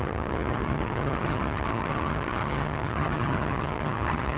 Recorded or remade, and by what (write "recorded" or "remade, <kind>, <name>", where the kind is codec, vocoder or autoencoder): remade, vocoder, HiFi-GAN